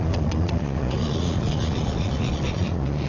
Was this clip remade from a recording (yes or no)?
yes